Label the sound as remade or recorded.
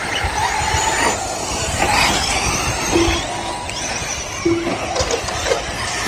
recorded